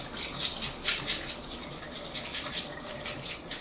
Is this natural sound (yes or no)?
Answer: yes